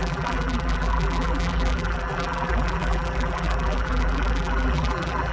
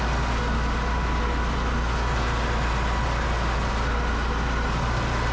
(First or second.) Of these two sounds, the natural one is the second